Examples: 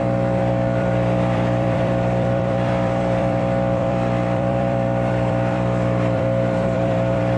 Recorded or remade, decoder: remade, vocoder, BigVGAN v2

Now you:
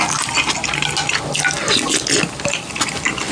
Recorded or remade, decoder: recorded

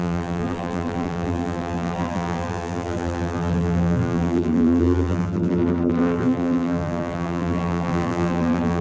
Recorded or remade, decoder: remade, vocoder, BigVGAN v2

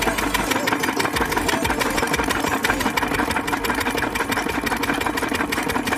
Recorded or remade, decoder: recorded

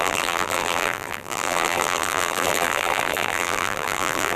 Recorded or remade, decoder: remade, vocoder, BigVGAN v2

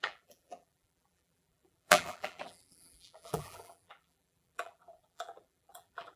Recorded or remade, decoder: remade, vocoder, BigVGAN v2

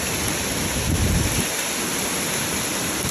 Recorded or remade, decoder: recorded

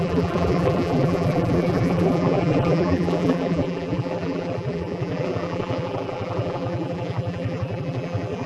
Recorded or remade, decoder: remade, vocoder, BigVGAN v2